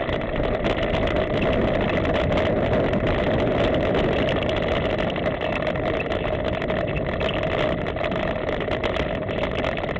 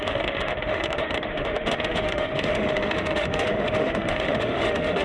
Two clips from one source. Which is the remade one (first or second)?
second